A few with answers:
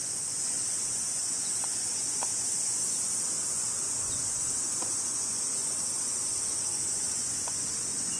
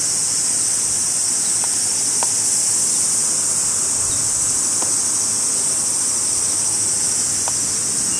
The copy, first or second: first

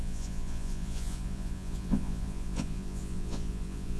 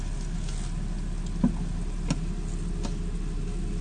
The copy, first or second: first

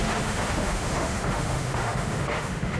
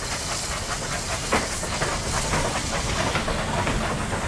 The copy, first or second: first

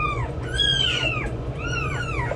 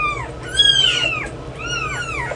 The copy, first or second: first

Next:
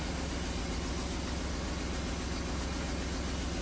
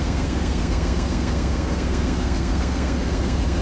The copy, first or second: second